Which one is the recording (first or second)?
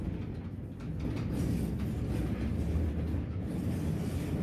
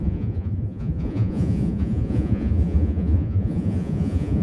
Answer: first